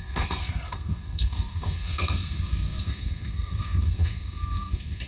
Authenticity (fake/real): fake